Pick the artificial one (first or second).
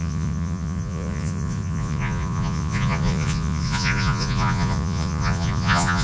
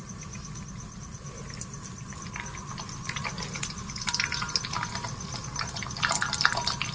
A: first